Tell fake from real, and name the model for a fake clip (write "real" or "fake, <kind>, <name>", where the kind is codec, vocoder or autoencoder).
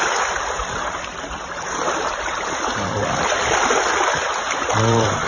fake, vocoder, BigVGAN v2